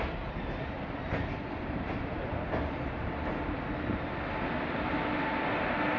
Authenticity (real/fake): real